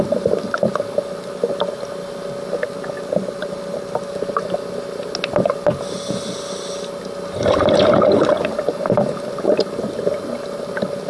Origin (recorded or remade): recorded